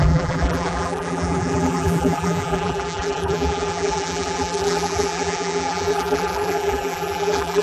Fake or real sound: fake